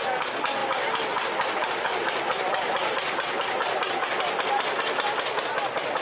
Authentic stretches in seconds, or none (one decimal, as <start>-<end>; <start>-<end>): 0.0-6.0